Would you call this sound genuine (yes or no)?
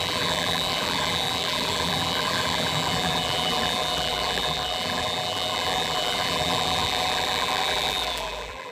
no